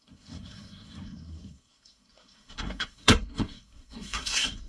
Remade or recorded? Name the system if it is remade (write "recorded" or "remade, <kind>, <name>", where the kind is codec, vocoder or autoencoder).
remade, codec, SNAC